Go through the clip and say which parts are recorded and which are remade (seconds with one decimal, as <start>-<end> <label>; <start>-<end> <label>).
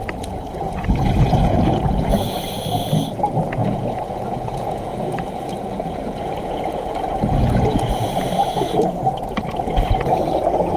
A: 0.0-10.8 remade